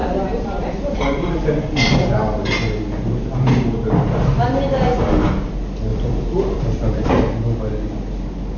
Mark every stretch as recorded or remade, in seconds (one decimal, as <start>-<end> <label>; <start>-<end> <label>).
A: 0.0-2.1 remade; 2.1-5.9 recorded; 5.9-7.1 remade; 7.1-8.6 recorded